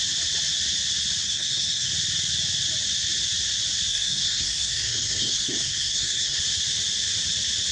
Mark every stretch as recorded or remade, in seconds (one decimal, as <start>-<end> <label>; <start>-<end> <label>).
0.0-1.2 recorded; 1.2-1.9 remade; 1.9-3.9 recorded; 3.9-6.4 remade; 6.4-7.7 recorded